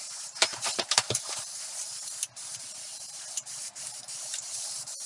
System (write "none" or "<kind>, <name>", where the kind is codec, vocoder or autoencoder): vocoder, BigVGAN v2